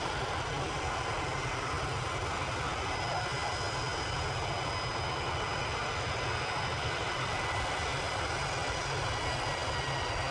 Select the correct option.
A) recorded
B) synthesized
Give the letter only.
A